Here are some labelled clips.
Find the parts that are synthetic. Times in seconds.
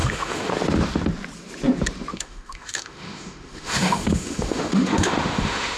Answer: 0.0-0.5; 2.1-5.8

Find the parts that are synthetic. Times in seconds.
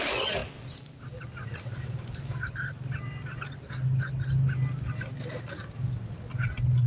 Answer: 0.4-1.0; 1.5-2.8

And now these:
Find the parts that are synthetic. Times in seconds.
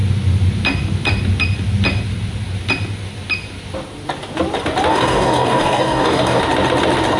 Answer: 4.9-6.4